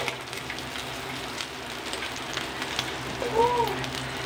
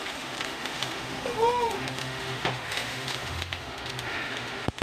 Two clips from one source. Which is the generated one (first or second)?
second